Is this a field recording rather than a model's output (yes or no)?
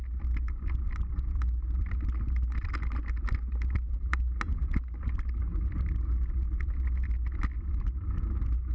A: yes